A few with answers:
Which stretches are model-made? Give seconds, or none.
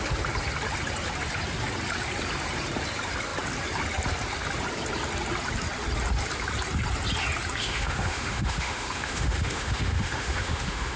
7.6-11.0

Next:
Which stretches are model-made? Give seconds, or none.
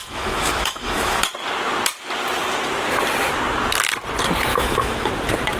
0.0-1.2; 4.5-5.1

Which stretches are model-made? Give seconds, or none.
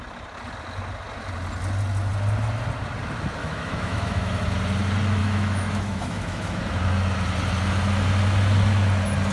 3.4-4.4; 5.2-6.6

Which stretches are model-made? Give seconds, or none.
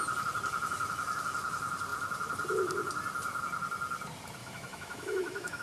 4.4-5.6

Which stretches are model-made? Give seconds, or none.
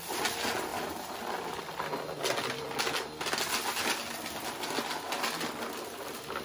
none